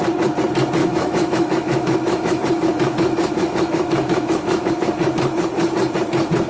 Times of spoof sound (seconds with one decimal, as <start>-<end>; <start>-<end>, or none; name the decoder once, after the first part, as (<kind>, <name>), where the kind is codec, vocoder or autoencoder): 0.8-4.7 (autoencoder, DAC-VAE)